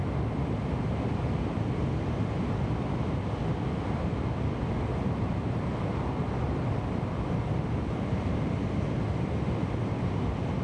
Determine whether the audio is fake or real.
real